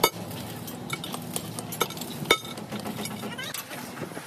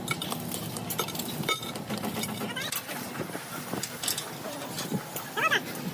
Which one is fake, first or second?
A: second